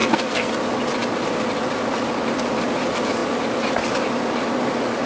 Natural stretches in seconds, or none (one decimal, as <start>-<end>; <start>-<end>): 0.5-5.1